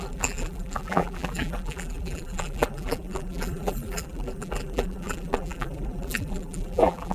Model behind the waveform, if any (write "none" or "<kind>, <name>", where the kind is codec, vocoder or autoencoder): vocoder, BigVGAN v2